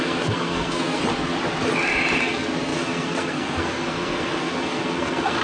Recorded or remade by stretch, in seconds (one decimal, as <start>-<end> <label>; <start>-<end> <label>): 0.0-1.0 remade; 1.0-2.2 recorded; 2.2-5.4 remade